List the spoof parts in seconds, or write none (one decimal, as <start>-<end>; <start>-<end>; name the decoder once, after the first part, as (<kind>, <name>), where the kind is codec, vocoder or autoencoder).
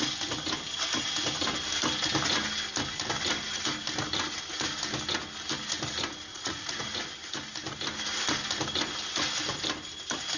6.3-7.0 (vocoder, Vocos)